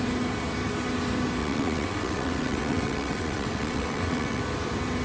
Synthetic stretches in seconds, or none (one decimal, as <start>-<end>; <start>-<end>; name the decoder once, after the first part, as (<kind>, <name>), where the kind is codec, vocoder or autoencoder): 1.4-4.4 (vocoder, WaveNeXt)